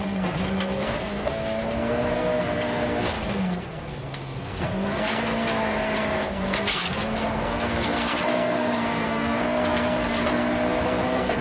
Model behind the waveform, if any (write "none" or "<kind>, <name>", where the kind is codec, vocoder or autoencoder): codec, SNAC